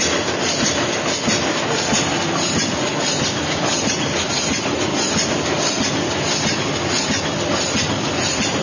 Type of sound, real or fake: real